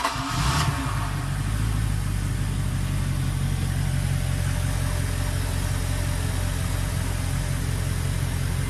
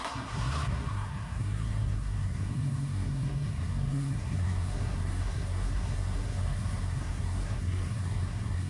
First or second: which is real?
first